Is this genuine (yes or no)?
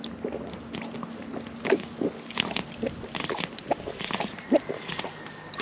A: yes